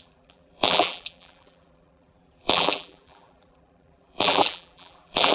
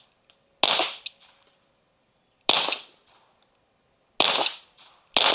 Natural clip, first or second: second